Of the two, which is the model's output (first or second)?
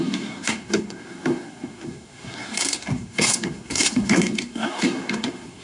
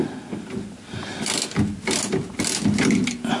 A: first